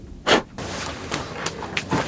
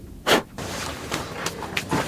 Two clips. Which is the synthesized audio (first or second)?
second